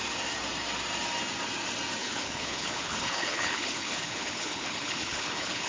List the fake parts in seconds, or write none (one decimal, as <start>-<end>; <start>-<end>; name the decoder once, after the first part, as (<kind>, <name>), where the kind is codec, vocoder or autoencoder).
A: 2.0-5.7 (codec, HILCodec)

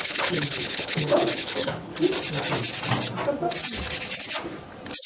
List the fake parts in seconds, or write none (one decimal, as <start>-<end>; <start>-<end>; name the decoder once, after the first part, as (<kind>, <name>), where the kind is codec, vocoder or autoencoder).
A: 0.0-1.9 (codec, HILCodec)

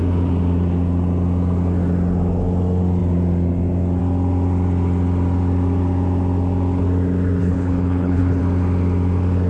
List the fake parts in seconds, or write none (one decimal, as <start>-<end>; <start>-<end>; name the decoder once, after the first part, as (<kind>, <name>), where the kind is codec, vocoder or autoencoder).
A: 7.4-8.4 (codec, HILCodec)

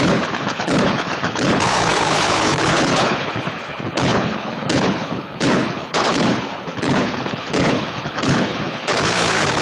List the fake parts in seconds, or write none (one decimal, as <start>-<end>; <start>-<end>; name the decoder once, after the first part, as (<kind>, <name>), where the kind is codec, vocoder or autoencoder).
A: 0.0-9.6 (codec, HILCodec)

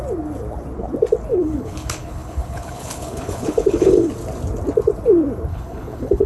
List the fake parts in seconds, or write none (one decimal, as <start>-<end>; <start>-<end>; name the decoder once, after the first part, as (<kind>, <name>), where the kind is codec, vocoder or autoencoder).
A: 1.3-4.1 (codec, HILCodec); 5.5-6.3